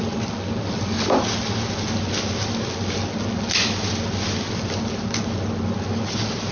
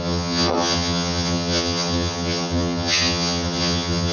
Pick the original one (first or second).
first